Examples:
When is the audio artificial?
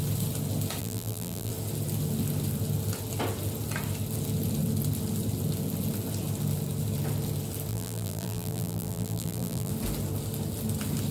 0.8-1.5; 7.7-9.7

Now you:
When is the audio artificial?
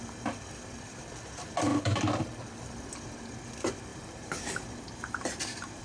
1.7-2.3; 3.9-5.8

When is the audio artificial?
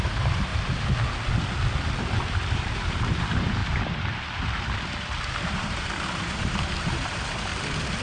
0.0-0.5; 2.1-3.6; 5.0-7.5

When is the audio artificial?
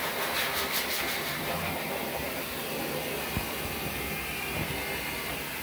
3.3-4.1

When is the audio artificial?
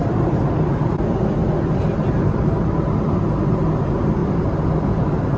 0.0-0.8; 1.4-2.8